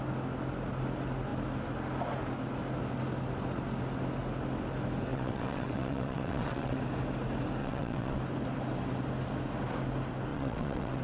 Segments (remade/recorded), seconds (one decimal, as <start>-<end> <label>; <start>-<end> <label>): 0.0-5.1 recorded; 5.1-6.8 remade; 6.8-7.6 recorded; 7.6-8.2 remade; 8.2-10.3 recorded; 10.3-11.0 remade

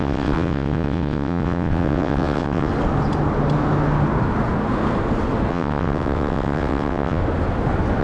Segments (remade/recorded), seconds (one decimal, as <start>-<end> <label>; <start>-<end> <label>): 0.0-2.7 remade; 2.7-5.5 recorded; 5.5-7.2 remade; 7.2-8.0 recorded

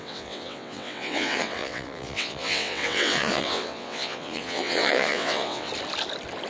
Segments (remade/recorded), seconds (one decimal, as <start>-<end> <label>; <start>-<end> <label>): 0.0-5.7 remade; 5.7-6.5 recorded

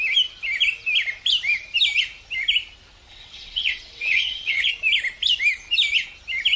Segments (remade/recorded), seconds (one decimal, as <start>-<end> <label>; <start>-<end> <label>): 0.0-3.1 recorded; 3.1-4.7 remade; 4.7-6.6 recorded

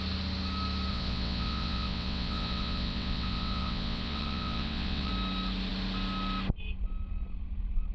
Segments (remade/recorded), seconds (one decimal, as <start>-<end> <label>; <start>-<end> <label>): 0.0-0.9 recorded; 0.9-5.1 remade; 5.1-7.9 recorded

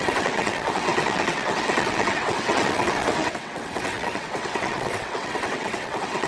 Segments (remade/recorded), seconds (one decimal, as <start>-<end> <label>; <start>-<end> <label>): 0.0-6.3 remade

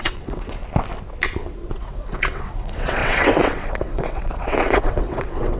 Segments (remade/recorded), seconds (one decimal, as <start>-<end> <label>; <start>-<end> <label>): 0.0-0.6 remade; 0.6-1.7 recorded; 1.7-5.6 remade